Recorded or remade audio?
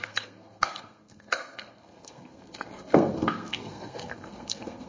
remade